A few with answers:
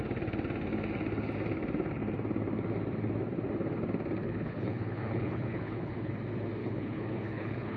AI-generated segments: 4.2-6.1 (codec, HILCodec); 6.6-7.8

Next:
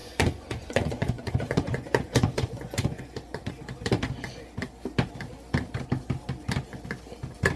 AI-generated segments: 0.0-3.5 (vocoder, Vocos)

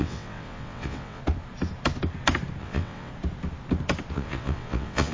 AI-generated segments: 0.0-1.2 (vocoder, WaveNeXt); 2.6-3.1; 4.1-5.1

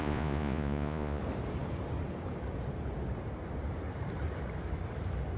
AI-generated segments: 0.0-1.2 (vocoder, Vocos)

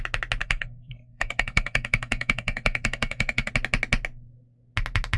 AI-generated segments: 0.4-3.5 (codec, SNAC)

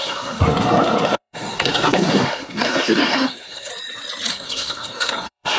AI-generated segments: 0.0-3.7 (codec, SNAC); 4.3-5.6